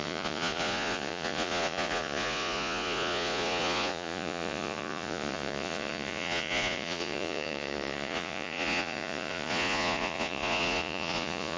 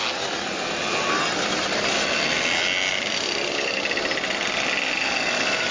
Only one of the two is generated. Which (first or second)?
first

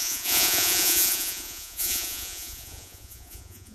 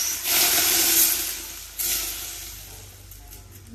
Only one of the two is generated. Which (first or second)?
first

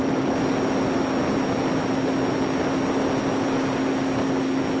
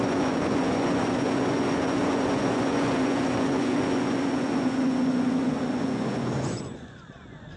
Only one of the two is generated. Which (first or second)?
second